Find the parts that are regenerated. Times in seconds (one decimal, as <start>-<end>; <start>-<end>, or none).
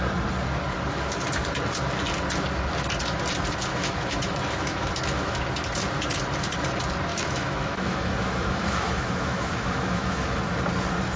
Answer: 3.7-5.4; 7.1-10.4